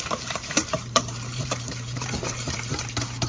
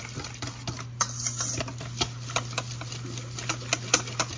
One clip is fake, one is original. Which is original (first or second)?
second